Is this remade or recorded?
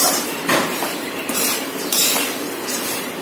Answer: remade